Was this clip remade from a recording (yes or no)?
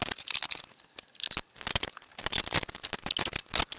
no